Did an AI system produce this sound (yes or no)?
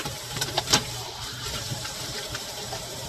yes